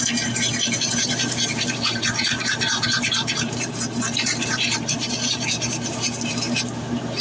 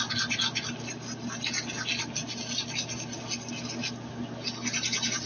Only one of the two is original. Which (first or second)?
second